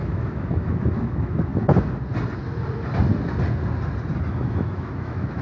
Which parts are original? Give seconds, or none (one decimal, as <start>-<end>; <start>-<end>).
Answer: 1.5-4.3